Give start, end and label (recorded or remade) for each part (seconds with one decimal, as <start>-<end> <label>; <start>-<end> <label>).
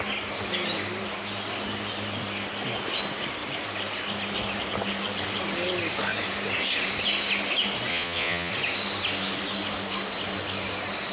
0.0-7.9 recorded; 7.9-8.5 remade; 8.5-11.1 recorded